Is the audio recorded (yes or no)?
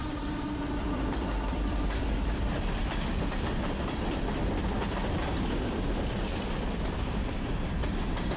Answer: no